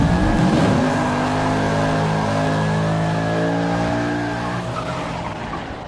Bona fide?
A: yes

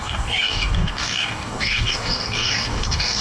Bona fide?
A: no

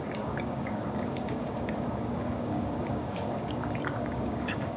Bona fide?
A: no